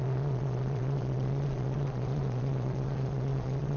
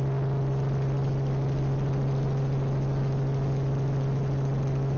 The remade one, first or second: first